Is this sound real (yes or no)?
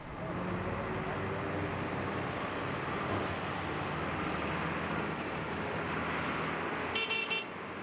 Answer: yes